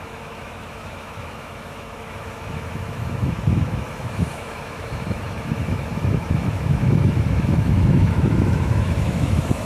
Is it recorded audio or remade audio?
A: remade